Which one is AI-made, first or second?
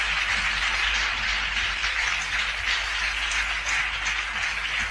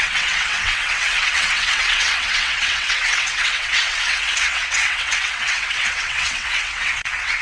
second